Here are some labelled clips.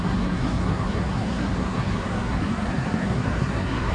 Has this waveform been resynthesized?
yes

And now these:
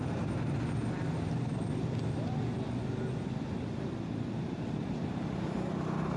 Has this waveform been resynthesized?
no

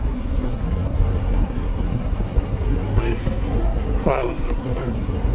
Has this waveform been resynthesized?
yes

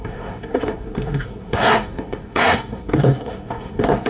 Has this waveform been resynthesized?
yes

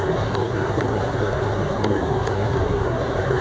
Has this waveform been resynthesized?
yes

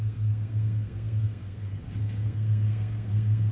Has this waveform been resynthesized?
yes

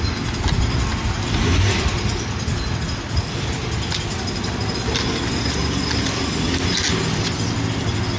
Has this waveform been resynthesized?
no